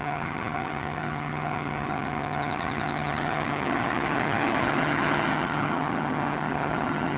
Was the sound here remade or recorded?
remade